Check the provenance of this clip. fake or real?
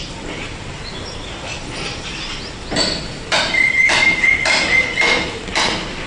real